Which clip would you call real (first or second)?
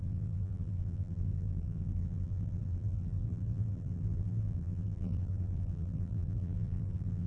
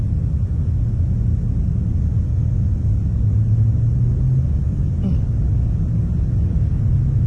second